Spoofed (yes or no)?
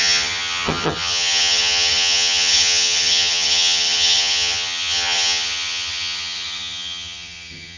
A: yes